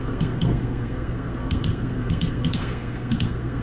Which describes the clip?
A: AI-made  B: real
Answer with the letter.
A